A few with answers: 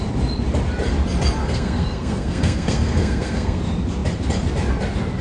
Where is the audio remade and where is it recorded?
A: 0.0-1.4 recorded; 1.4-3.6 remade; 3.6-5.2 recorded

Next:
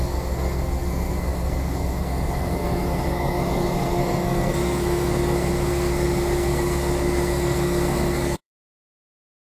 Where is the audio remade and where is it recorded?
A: 0.0-9.5 remade

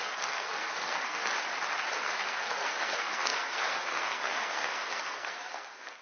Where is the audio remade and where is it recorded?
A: 0.0-1.3 remade; 1.3-2.0 recorded; 2.0-6.0 remade

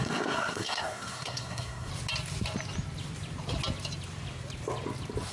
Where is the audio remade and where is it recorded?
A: 0.0-1.9 remade; 1.9-5.3 recorded